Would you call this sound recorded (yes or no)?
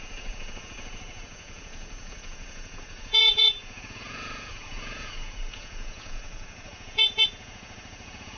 no